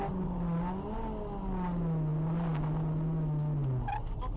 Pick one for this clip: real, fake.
real